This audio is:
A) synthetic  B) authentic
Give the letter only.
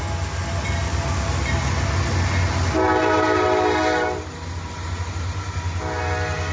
B